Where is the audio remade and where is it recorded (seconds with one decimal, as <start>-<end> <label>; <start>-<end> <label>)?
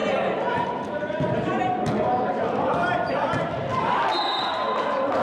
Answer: 0.0-5.2 recorded